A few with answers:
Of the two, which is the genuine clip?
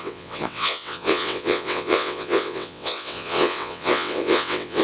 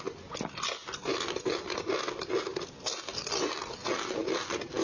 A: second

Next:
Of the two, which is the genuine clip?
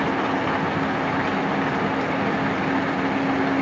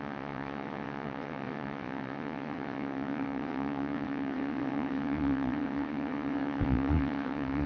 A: first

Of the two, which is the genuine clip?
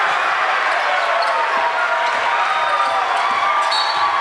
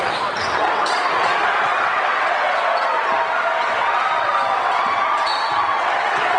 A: first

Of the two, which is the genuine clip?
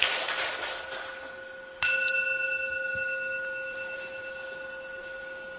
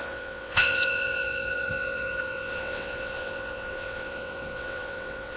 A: first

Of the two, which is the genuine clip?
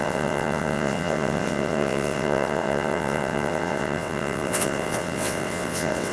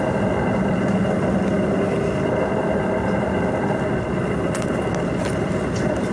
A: second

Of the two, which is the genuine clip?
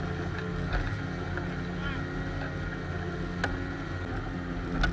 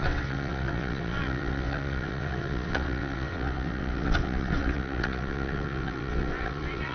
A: first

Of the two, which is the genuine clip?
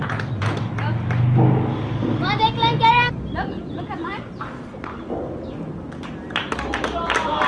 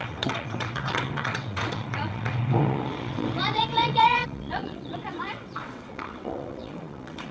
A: first